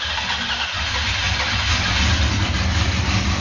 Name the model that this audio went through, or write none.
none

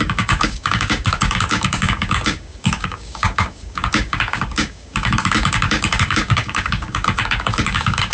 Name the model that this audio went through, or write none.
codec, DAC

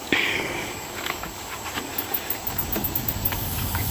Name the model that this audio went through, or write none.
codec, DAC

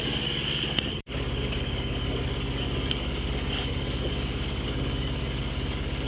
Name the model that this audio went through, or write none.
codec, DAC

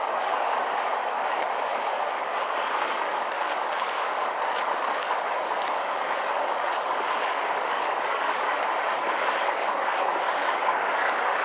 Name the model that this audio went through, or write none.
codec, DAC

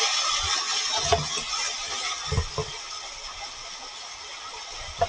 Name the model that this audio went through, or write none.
none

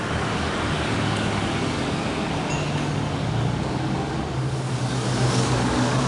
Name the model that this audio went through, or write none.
codec, DAC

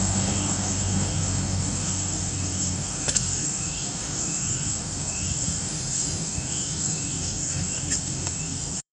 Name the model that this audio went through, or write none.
codec, DAC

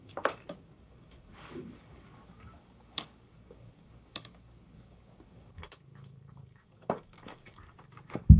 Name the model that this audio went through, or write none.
codec, DAC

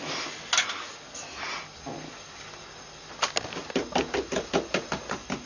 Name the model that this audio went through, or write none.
none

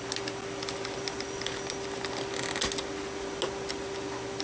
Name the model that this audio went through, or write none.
none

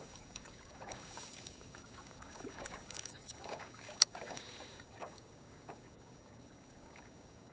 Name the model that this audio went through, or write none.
codec, DAC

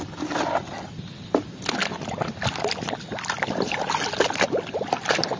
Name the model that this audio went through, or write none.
none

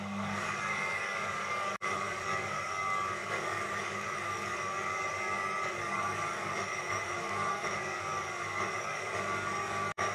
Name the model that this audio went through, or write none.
codec, DAC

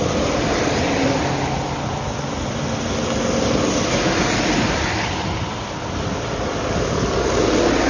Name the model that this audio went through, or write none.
none